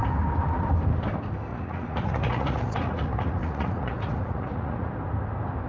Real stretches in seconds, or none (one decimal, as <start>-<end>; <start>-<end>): 0.0-1.5; 4.9-5.7